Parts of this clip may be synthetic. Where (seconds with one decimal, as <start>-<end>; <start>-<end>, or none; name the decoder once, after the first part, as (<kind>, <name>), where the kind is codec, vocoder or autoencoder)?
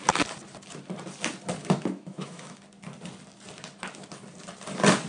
1.6-2.6 (autoencoder, DAC-VAE)